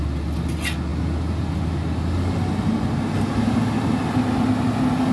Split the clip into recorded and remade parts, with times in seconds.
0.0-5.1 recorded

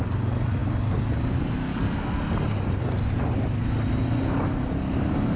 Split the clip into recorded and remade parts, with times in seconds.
0.0-5.4 recorded

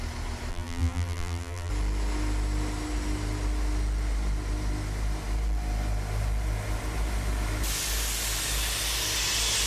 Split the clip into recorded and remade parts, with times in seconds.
0.0-0.5 recorded; 0.5-1.7 remade; 1.7-9.7 recorded